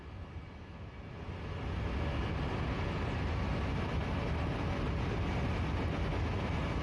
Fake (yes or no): no